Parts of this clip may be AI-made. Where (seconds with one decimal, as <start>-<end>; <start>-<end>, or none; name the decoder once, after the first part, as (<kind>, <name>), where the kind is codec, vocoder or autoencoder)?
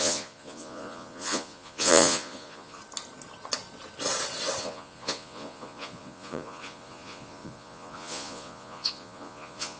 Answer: 0.0-2.8 (vocoder, Vocos); 4.6-9.8